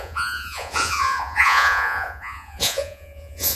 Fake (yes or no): yes